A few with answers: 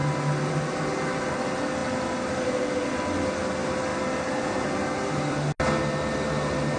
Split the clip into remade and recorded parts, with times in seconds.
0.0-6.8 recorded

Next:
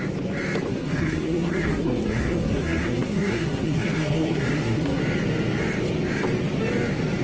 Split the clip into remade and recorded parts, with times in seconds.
0.0-0.7 recorded; 0.7-5.0 remade; 5.0-7.2 recorded

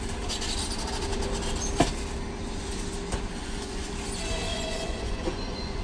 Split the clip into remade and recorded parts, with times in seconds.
0.0-3.4 recorded; 3.4-3.9 remade; 3.9-4.5 recorded; 4.5-5.8 remade